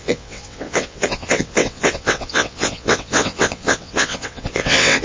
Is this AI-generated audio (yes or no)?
yes